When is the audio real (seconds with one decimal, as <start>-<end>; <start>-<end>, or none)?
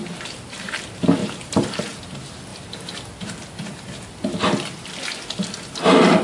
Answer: 0.0-1.2; 1.8-6.2